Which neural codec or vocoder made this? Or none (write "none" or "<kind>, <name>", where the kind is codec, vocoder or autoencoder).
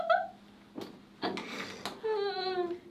none